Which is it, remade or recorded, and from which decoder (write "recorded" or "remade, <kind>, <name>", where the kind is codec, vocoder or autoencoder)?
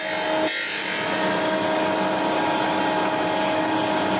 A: recorded